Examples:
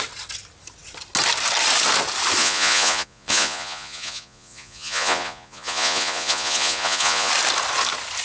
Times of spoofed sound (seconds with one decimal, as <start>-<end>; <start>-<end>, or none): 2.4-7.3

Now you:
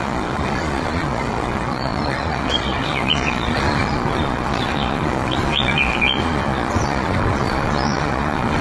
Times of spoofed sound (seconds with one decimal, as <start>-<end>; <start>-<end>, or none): 0.0-8.6

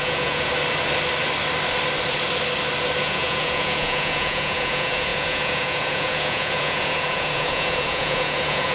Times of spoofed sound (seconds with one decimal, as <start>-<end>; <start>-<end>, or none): 0.0-0.5; 3.0-8.7

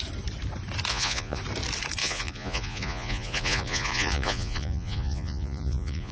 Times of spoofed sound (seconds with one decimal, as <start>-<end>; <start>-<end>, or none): 0.9-1.4; 2.0-6.1

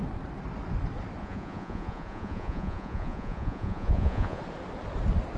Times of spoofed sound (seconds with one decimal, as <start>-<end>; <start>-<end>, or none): 1.2-4.4

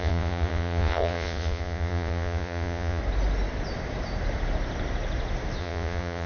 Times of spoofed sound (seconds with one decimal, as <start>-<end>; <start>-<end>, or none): 0.0-3.0; 5.6-6.3